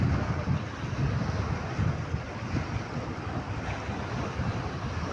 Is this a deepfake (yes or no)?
no